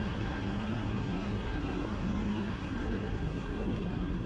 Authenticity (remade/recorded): remade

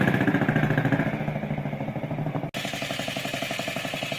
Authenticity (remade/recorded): recorded